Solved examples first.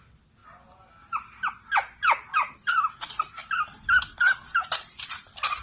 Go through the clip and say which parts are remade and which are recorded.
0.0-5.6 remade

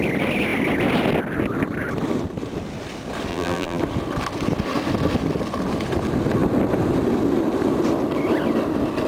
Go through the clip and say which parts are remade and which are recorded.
0.0-3.3 recorded; 3.3-3.8 remade; 3.8-9.1 recorded

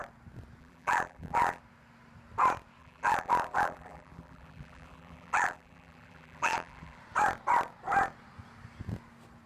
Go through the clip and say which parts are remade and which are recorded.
0.0-0.6 recorded; 0.6-1.6 remade; 1.6-2.8 recorded; 2.8-7.0 remade; 7.0-9.5 recorded

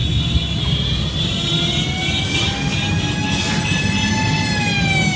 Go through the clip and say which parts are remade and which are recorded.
0.0-5.2 recorded